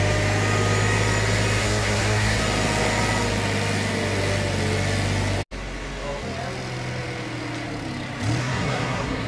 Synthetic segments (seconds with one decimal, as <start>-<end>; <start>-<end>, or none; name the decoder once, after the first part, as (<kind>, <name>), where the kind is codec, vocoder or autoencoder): 1.6-2.4 (codec, SNAC); 8.4-9.3